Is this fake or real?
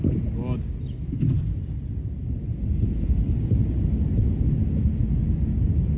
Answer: real